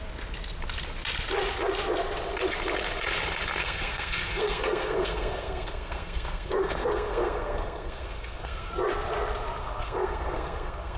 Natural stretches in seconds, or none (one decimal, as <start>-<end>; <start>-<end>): 0.0-3.6; 8.7-9.6

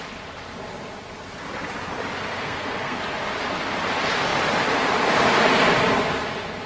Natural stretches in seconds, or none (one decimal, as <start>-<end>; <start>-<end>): 0.0-2.2; 3.0-6.7

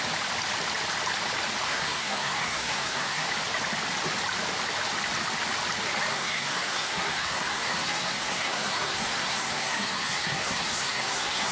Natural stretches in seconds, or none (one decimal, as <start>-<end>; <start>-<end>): 0.0-1.7; 3.3-6.1

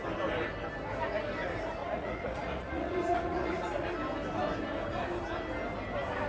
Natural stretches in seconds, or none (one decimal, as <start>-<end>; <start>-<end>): 0.0-1.8; 3.9-6.3

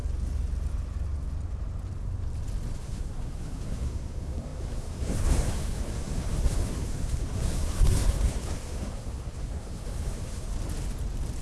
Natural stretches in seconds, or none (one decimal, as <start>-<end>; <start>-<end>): 0.0-2.8; 10.5-11.4

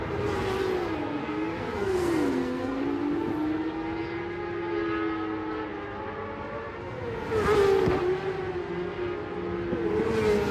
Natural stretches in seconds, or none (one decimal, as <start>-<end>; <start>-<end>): 0.0-1.2; 2.8-10.5

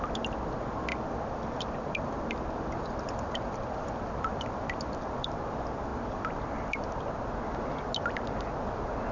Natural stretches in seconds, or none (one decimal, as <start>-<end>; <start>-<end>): 0.0-0.9; 5.3-5.9; 7.1-9.1

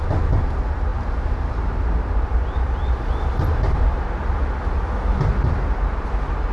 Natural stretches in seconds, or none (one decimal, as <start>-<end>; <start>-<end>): 0.0-6.5